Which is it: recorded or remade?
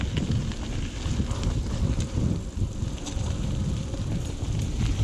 recorded